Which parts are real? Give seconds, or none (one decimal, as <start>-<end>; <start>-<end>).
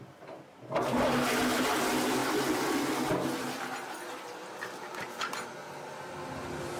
0.0-6.8